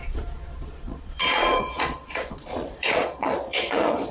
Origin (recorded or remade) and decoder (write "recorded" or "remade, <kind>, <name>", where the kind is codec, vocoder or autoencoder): remade, vocoder, Vocos